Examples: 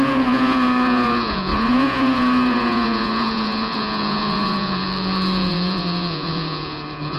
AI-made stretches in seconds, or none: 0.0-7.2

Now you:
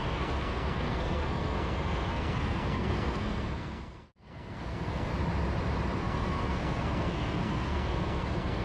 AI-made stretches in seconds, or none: 0.0-5.1; 6.0-8.6

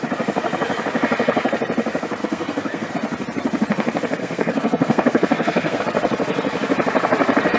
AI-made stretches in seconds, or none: 2.2-2.9; 4.2-5.8

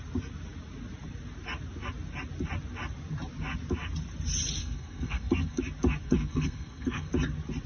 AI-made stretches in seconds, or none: 4.6-5.6; 6.0-7.1

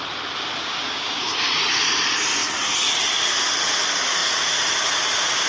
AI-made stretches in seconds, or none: 0.6-1.3

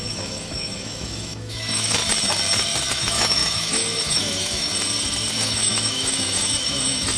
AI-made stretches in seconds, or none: 0.0-2.0; 2.9-4.7; 5.3-7.2

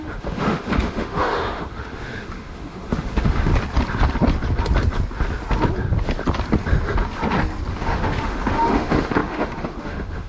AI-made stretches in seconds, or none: 0.0-3.5; 7.7-10.3